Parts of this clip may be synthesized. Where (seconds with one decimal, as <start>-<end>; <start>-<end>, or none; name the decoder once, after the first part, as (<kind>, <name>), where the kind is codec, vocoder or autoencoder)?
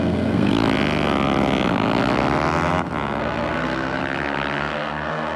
0.0-0.5 (codec, SNAC); 3.2-4.0; 4.6-5.4